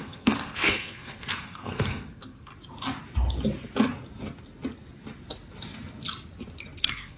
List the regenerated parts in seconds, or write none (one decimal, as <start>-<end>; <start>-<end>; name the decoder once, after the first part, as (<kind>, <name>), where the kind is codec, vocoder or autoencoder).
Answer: 0.0-2.5 (codec, SNAC); 6.8-7.2